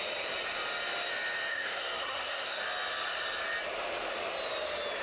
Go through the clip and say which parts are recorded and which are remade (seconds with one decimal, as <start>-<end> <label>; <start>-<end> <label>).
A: 0.0-1.5 recorded; 1.5-2.6 remade; 2.6-5.0 recorded